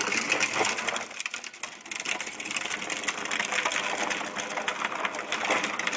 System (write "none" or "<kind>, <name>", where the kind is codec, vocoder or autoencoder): none